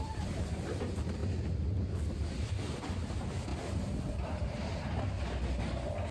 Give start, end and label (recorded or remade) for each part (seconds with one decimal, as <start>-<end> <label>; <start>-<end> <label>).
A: 0.0-6.1 recorded